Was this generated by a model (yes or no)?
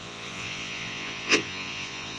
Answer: yes